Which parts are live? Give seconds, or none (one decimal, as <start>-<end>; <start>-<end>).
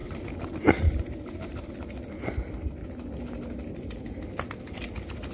1.7-5.3